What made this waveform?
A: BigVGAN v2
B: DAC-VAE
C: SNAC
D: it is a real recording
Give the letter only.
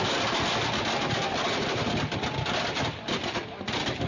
D